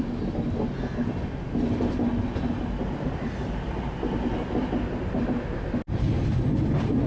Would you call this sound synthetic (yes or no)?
no